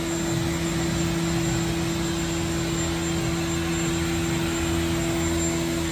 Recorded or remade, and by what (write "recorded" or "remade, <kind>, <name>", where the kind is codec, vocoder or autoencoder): recorded